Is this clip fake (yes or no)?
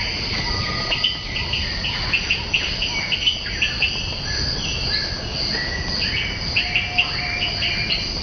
no